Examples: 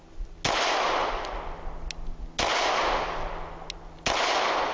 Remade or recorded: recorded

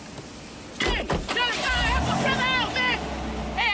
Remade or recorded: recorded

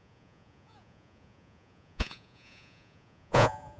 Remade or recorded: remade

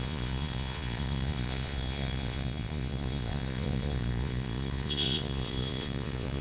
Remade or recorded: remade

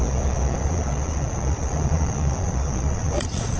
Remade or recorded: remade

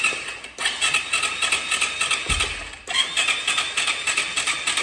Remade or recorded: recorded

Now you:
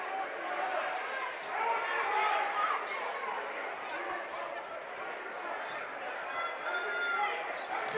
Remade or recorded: recorded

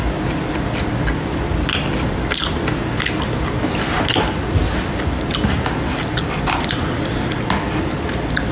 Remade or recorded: recorded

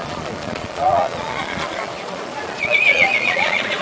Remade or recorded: remade